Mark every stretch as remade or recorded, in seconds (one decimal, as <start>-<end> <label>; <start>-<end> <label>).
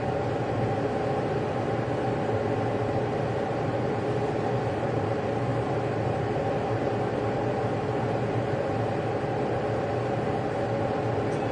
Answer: 0.0-5.5 recorded; 5.5-6.4 remade; 6.4-11.5 recorded